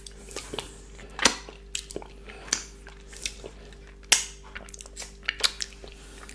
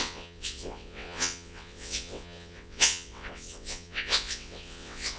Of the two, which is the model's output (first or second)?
second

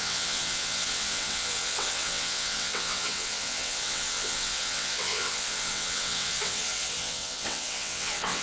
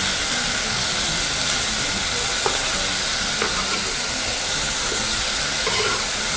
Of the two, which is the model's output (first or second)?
first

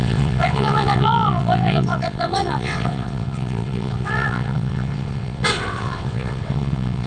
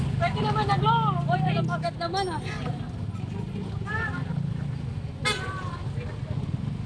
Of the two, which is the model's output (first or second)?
first